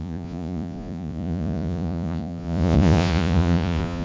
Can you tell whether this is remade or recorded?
remade